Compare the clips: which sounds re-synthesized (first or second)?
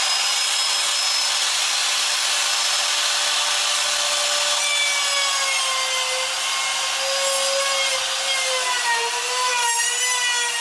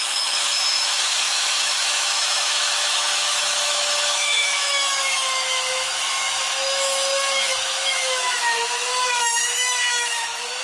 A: second